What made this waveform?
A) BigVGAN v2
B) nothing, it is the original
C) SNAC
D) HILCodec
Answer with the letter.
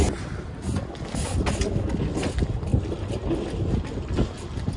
B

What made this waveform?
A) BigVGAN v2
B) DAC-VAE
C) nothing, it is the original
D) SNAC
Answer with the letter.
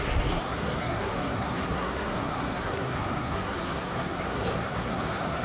D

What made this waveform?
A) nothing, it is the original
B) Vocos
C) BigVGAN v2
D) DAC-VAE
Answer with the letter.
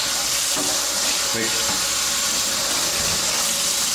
A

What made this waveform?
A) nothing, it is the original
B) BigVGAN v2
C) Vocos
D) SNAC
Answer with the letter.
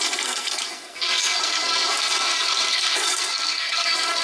D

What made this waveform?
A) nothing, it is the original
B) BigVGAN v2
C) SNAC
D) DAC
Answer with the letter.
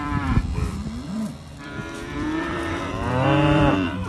B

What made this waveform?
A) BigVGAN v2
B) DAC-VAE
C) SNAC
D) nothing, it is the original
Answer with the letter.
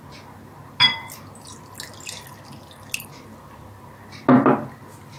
D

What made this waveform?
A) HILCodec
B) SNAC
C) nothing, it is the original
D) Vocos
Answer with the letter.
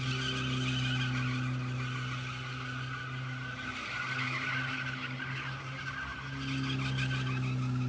C